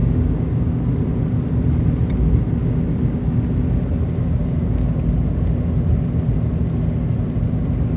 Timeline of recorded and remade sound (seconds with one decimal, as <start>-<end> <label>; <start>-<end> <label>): 0.0-0.9 remade; 0.9-2.6 recorded; 2.6-3.2 remade; 3.2-4.2 recorded; 4.2-4.9 remade; 4.9-8.0 recorded